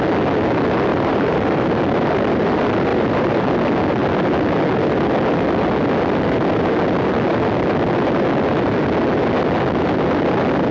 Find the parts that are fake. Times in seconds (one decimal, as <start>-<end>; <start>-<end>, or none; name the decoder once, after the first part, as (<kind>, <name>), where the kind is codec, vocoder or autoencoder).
0.9-1.7 (vocoder, BigVGAN v2); 2.9-3.5